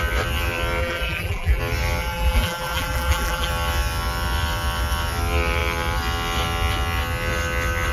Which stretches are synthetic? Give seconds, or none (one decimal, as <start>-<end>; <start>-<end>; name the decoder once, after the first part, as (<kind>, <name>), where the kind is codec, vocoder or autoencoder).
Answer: 0.8-1.6 (vocoder, BigVGAN v2); 2.0-3.5